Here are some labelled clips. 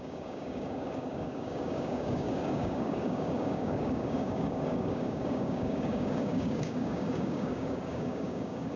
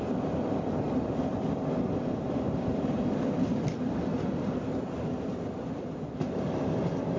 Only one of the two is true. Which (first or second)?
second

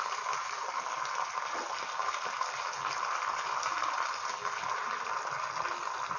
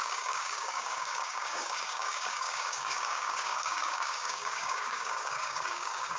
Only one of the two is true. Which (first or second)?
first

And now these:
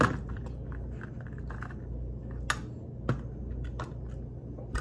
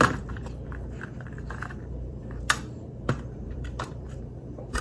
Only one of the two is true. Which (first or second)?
first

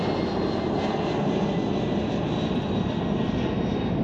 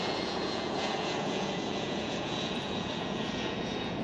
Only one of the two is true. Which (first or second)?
first